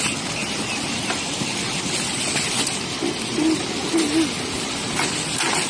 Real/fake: real